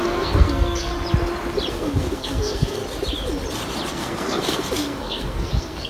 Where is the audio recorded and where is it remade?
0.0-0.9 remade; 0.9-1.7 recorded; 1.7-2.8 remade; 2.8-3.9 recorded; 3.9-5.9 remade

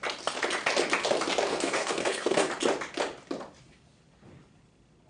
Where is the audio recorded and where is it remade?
0.0-1.5 recorded; 1.5-2.5 remade; 2.5-5.1 recorded

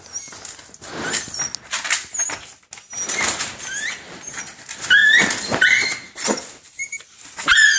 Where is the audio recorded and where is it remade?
0.0-7.8 recorded

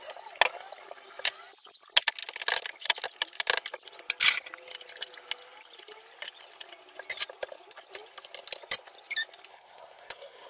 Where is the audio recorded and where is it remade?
0.0-9.5 recorded; 9.5-10.5 remade

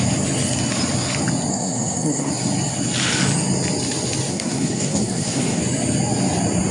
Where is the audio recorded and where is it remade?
0.0-1.5 recorded; 1.5-2.3 remade; 2.3-4.3 recorded; 4.3-5.6 remade; 5.6-6.7 recorded